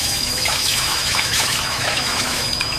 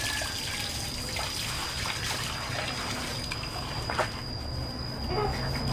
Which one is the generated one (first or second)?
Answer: first